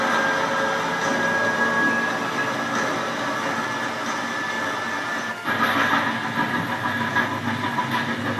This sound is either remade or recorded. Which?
recorded